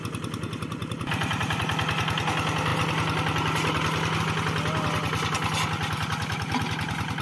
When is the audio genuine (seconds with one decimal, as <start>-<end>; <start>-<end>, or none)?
0.0-0.8; 1.6-7.2